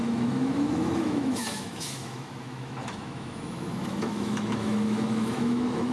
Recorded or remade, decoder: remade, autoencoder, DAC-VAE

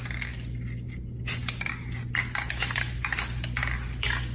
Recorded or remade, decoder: recorded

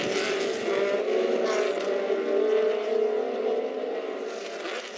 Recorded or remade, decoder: recorded